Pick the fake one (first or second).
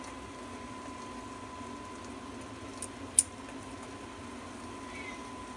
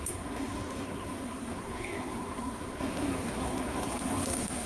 second